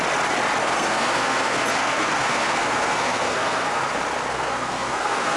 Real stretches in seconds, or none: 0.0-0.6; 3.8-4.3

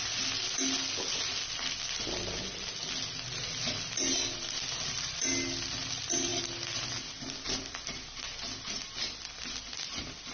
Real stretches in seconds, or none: 0.0-10.3